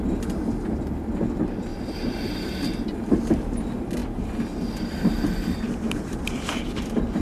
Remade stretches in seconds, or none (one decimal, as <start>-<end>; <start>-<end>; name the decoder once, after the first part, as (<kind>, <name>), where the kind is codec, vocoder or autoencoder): 1.7-2.5 (vocoder, BigVGAN v2); 4.0-7.2